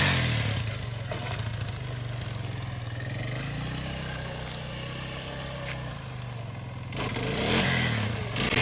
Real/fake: real